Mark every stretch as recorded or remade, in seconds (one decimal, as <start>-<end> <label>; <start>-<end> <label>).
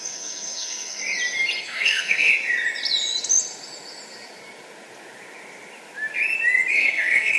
0.0-1.0 remade; 1.0-1.6 recorded; 1.6-2.3 remade; 2.3-6.7 recorded; 6.7-7.4 remade